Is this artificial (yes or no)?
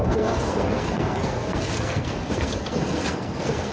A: yes